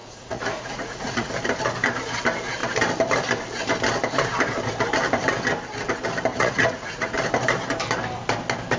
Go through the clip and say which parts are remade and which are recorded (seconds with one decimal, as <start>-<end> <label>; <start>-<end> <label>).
0.0-1.3 remade; 1.3-6.3 recorded; 6.3-7.1 remade; 7.1-8.8 recorded